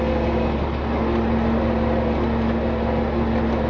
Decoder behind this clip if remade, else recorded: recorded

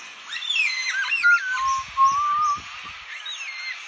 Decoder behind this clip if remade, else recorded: recorded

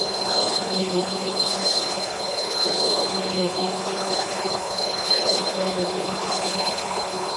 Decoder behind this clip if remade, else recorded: remade, codec, HILCodec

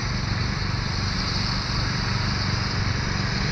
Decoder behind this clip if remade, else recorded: recorded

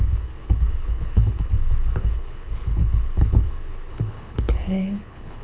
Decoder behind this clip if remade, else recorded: remade, codec, HILCodec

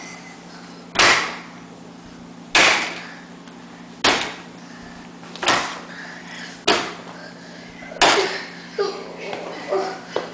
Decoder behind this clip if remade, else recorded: recorded